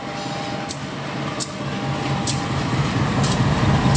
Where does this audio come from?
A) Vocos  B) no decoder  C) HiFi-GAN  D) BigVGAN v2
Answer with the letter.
B